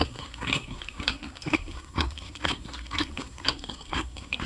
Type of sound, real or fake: fake